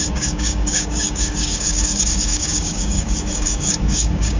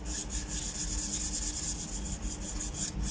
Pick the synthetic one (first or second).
first